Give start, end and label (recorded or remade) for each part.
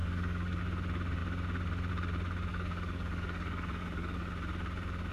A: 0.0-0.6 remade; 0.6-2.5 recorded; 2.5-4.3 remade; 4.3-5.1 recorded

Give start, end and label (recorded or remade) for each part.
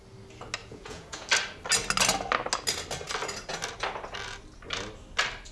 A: 0.0-0.6 recorded; 0.6-1.3 remade; 1.3-5.5 recorded